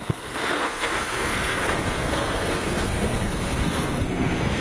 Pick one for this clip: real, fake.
fake